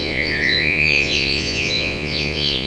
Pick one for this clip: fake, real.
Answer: fake